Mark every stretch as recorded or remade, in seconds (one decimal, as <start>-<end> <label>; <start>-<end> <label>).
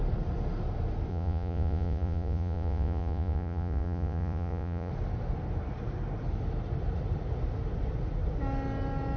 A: 0.0-1.1 recorded; 1.1-4.9 remade; 4.9-9.2 recorded